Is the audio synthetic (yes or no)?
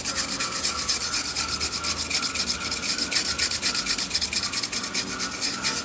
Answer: no